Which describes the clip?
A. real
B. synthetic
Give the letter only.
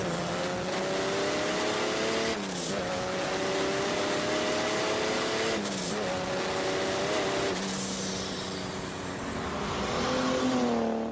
A